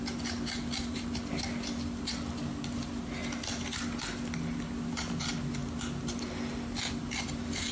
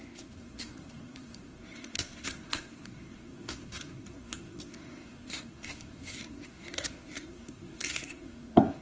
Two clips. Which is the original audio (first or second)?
first